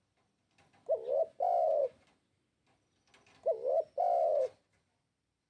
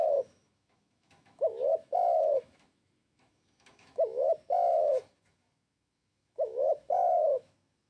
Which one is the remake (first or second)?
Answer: second